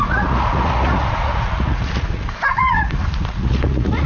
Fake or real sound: fake